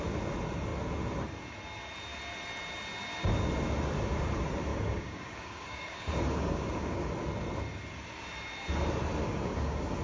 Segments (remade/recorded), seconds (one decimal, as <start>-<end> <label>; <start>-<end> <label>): 0.0-4.7 recorded; 4.7-7.1 remade; 7.1-9.2 recorded; 9.2-10.0 remade